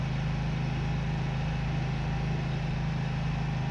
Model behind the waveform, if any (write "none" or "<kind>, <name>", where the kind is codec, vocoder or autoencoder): none